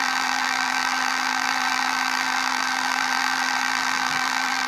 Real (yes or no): no